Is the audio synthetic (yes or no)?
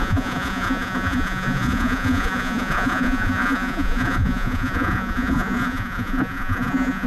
yes